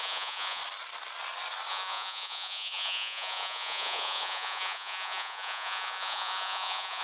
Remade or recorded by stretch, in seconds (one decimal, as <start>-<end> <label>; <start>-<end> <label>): 0.0-0.6 remade; 0.6-1.7 recorded; 1.7-7.0 remade